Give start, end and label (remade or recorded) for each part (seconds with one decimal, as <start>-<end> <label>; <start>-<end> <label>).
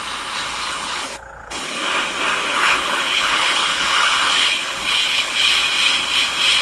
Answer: 0.0-0.6 recorded; 0.6-1.8 remade; 1.8-2.5 recorded; 2.5-5.5 remade; 5.5-6.6 recorded